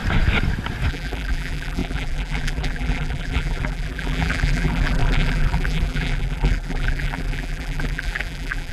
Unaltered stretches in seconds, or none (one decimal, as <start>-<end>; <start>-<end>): 0.0-0.9